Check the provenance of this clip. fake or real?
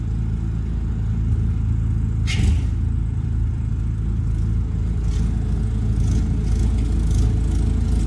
real